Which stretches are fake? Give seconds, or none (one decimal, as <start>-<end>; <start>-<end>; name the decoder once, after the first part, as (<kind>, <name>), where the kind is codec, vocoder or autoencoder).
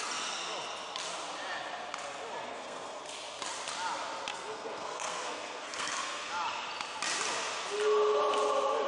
2.5-3.0 (codec, SNAC); 4.3-6.3